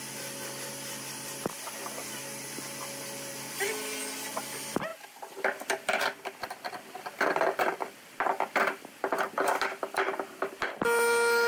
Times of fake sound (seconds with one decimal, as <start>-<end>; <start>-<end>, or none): none